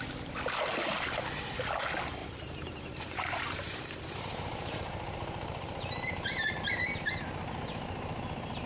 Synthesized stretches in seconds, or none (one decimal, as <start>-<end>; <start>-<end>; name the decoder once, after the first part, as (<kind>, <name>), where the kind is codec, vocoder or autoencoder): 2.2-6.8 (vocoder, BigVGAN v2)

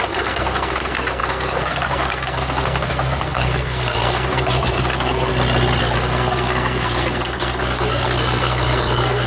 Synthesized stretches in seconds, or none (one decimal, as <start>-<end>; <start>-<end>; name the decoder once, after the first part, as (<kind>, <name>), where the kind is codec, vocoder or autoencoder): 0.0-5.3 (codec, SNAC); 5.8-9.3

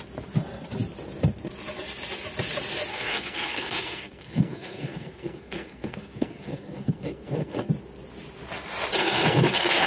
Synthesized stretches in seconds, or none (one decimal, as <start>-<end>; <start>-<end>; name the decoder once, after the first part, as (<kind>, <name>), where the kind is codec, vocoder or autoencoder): 2.9-7.7 (codec, SNAC); 9.0-9.9

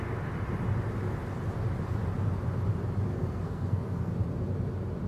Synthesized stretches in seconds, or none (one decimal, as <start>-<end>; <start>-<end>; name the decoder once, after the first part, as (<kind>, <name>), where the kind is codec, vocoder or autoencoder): 3.1-4.1 (codec, SNAC)

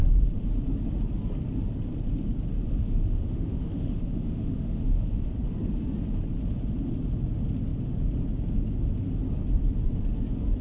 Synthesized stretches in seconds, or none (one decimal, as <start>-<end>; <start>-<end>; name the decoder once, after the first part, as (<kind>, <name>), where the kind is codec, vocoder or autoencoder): 2.8-5.1 (autoencoder, DAC-VAE)